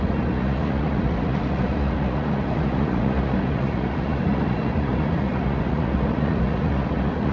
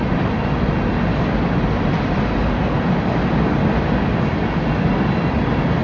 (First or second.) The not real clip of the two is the first